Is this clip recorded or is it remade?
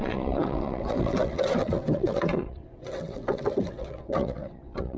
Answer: remade